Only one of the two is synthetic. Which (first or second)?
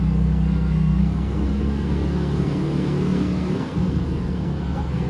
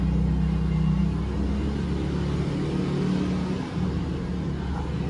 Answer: first